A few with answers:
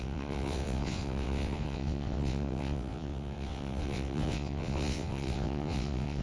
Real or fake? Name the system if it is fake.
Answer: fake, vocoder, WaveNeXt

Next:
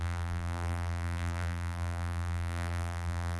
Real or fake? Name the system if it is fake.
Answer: fake, vocoder, BigVGAN v2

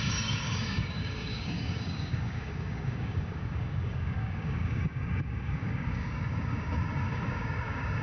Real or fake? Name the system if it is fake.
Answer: fake, codec, DAC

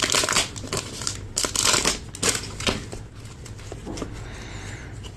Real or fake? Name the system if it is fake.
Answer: real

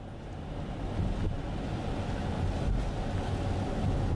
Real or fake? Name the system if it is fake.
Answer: real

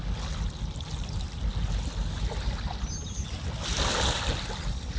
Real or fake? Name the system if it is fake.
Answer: real